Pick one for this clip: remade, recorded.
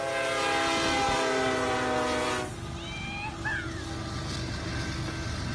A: recorded